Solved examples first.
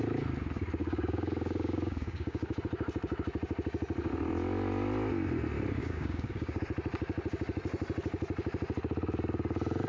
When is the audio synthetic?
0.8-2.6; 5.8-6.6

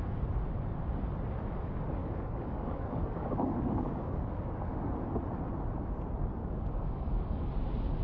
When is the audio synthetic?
2.0-4.9; 6.4-7.5

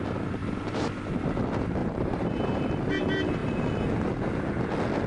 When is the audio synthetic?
0.4-1.1; 1.8-2.9

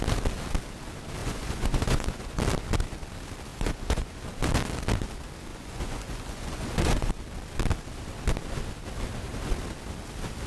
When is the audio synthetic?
1.2-2.4; 3.5-4.2; 5.5-7.1

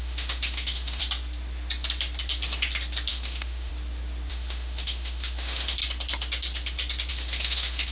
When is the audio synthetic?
0.0-1.0; 3.1-3.7; 4.3-5.8; 7.1-7.9

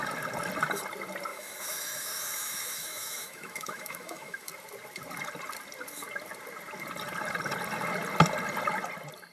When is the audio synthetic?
1.3-4.5

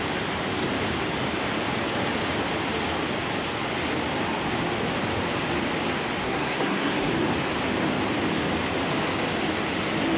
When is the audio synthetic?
6.2-7.1